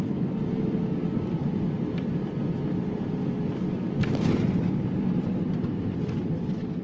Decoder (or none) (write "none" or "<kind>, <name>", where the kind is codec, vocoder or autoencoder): none